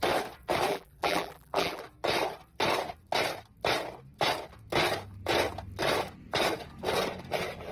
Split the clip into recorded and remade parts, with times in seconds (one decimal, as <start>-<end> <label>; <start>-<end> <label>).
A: 0.0-0.7 recorded; 0.7-1.8 remade; 1.8-7.7 recorded